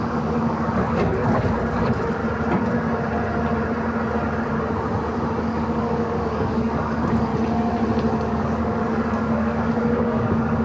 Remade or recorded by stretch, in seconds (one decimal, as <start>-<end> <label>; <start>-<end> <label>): 0.0-2.2 remade; 2.2-5.4 recorded; 5.4-7.3 remade; 7.3-8.3 recorded; 8.3-10.6 remade